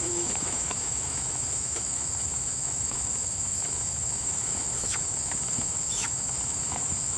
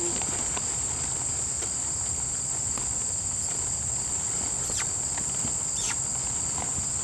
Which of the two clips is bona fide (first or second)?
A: second